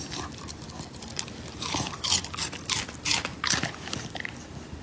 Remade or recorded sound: recorded